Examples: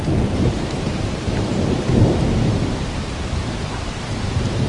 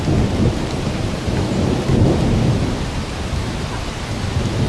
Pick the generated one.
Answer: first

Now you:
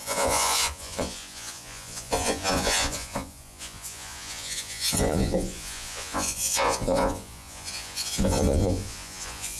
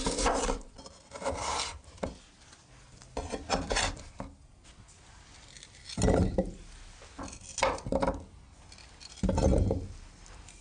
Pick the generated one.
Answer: first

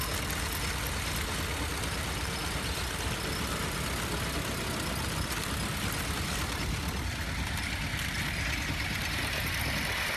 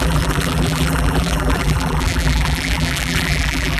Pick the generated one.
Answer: second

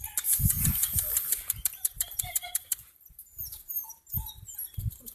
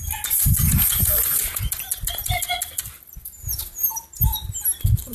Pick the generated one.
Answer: first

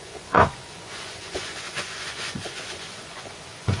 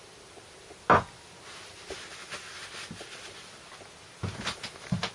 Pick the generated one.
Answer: first